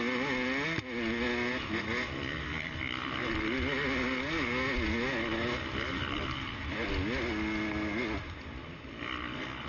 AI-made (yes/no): no